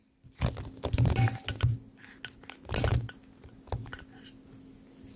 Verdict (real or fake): real